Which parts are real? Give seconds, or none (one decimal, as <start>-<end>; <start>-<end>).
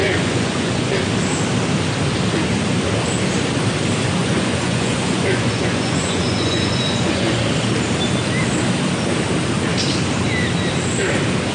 1.0-4.2; 7.4-11.5